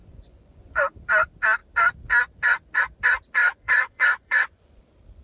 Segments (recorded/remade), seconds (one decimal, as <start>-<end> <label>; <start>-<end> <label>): 0.0-0.8 remade; 0.8-3.4 recorded; 3.4-4.8 remade; 4.8-5.2 recorded